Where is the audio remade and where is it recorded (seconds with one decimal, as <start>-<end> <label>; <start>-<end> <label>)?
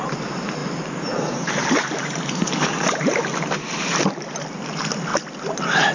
0.0-0.6 recorded; 0.6-3.2 remade; 3.2-5.9 recorded